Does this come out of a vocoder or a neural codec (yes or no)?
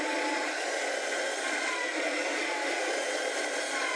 no